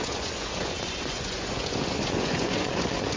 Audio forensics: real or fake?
fake